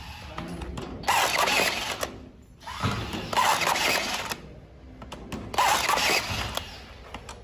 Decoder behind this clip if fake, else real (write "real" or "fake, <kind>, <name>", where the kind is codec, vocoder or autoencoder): real